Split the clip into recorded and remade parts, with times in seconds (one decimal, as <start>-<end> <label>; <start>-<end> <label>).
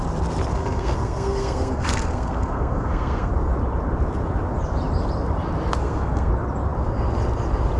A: 0.0-0.5 recorded; 0.5-3.3 remade; 3.3-5.8 recorded; 5.8-6.3 remade; 6.3-7.8 recorded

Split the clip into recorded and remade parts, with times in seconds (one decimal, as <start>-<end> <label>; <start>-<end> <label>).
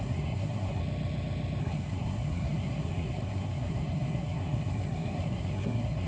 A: 0.0-0.8 remade; 0.8-1.6 recorded; 1.6-6.1 remade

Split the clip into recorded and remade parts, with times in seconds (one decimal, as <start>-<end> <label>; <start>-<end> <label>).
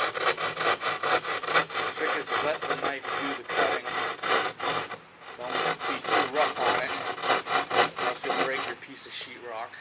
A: 0.0-9.8 recorded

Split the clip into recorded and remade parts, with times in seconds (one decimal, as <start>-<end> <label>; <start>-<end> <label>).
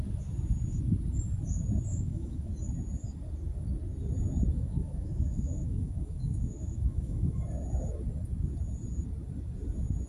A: 0.0-1.9 recorded; 1.9-2.5 remade; 2.5-4.5 recorded; 4.5-7.4 remade; 7.4-10.1 recorded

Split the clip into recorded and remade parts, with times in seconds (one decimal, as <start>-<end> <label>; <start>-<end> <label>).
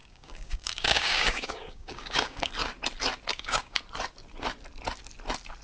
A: 0.0-2.5 remade; 2.5-3.3 recorded; 3.3-3.8 remade; 3.8-5.6 recorded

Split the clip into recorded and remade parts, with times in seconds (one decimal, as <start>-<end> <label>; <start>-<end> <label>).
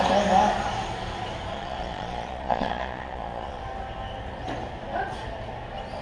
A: 0.0-1.5 recorded; 1.5-3.6 remade; 3.6-6.0 recorded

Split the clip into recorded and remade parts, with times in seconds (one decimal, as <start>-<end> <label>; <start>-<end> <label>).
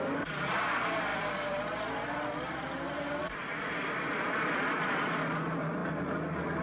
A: 0.0-6.6 recorded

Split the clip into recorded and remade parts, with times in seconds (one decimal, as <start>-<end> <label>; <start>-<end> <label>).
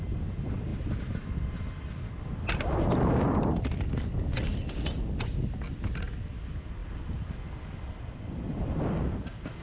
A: 0.0-9.6 recorded